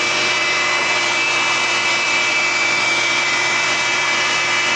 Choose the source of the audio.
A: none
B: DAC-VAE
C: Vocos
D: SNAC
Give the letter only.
C